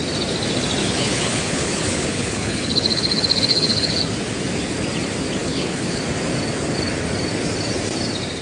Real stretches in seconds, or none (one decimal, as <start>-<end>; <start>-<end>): 0.0-0.8; 4.0-5.4; 6.0-8.4